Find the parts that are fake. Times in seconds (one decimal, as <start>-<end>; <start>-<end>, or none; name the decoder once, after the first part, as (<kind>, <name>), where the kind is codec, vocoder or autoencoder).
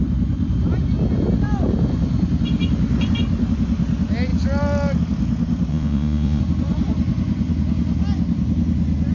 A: 5.7-6.4 (vocoder, Vocos)